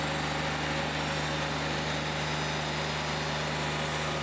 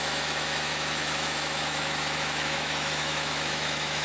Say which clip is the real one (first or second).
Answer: first